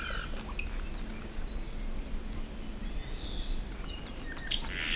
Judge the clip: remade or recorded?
recorded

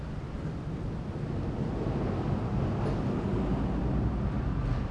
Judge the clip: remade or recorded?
recorded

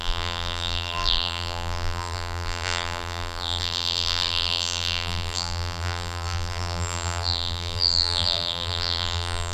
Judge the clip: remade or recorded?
remade